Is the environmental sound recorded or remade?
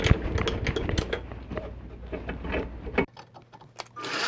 recorded